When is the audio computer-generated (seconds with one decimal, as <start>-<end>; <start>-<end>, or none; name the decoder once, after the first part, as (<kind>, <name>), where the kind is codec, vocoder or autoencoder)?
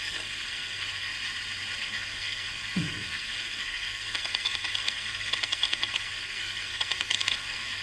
0.0-1.1 (codec, SNAC); 1.8-7.8